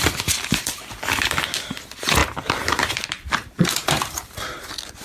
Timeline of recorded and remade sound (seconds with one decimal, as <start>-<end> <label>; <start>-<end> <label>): 0.0-2.2 recorded; 2.2-3.0 remade; 3.0-3.4 recorded; 3.4-4.6 remade; 4.6-5.0 recorded